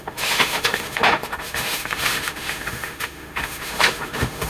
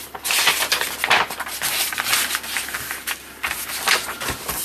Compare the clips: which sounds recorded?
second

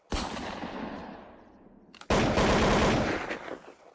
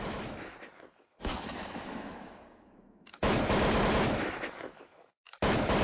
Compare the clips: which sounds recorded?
first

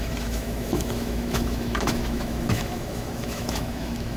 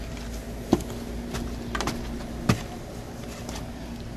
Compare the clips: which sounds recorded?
second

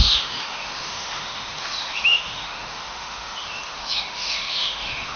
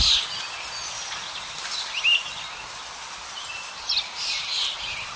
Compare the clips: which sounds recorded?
second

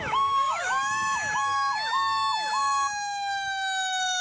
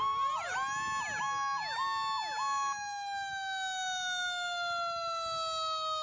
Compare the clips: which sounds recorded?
second